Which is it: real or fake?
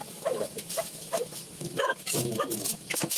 fake